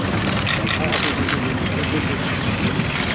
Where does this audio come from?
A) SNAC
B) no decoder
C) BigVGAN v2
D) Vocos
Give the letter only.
B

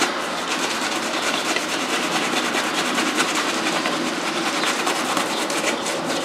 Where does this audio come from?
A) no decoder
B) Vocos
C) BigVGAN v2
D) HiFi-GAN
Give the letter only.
C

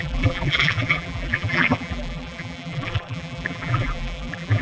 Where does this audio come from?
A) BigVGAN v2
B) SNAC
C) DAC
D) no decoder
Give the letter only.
A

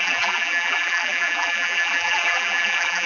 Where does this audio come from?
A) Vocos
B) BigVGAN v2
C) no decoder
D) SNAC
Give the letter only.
B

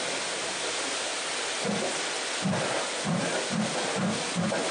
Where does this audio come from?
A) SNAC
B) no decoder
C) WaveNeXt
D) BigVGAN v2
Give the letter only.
B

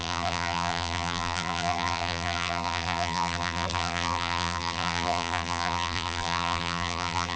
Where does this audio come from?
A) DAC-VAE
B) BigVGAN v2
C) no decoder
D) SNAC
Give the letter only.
B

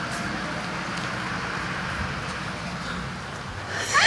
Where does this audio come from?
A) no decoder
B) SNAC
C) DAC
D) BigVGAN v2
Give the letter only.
A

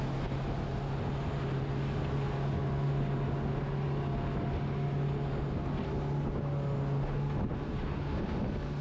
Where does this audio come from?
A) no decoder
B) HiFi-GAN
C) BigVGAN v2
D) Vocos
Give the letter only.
A